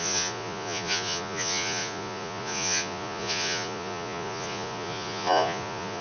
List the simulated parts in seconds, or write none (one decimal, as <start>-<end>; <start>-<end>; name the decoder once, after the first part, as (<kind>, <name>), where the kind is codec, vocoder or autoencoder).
0.0-6.0 (vocoder, Vocos)